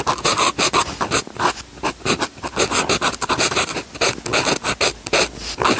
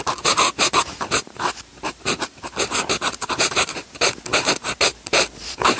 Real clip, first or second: first